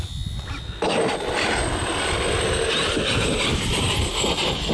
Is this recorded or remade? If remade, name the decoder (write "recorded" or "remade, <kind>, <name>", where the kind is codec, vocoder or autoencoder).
recorded